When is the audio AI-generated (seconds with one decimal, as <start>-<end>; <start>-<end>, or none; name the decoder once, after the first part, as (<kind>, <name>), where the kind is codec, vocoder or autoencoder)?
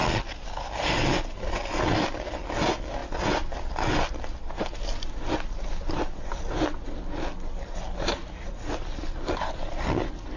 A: none